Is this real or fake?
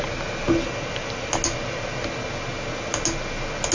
real